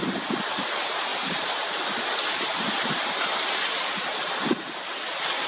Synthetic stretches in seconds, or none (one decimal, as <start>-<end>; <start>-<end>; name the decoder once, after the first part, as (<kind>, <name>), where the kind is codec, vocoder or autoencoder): 1.1-3.7 (vocoder, BigVGAN v2)